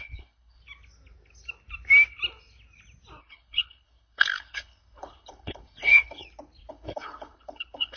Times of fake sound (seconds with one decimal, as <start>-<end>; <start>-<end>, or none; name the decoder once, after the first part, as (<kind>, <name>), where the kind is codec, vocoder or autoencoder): 0.0-0.6 (codec, HILCodec); 3.2-6.2; 6.7-8.0